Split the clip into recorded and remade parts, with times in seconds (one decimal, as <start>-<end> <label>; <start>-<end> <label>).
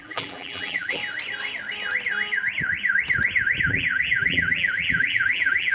0.0-1.0 remade; 1.0-3.6 recorded; 3.6-5.7 remade